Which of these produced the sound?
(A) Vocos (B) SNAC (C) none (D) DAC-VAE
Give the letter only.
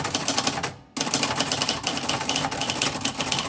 C